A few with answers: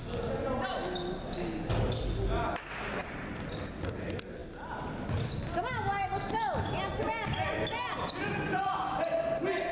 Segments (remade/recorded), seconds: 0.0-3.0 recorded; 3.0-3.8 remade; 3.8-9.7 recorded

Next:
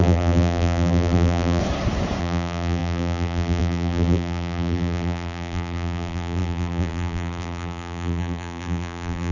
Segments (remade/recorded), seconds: 0.0-1.6 remade; 1.6-2.2 recorded; 2.2-9.3 remade

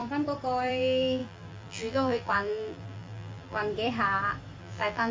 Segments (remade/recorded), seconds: 0.0-0.7 recorded; 0.7-3.6 remade; 3.6-4.6 recorded; 4.6-5.1 remade

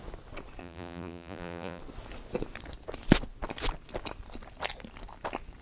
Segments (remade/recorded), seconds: 0.0-0.6 recorded; 0.6-1.8 remade; 1.8-5.6 recorded

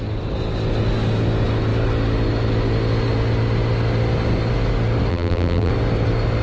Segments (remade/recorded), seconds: 0.0-5.1 recorded; 5.1-5.7 remade; 5.7-6.4 recorded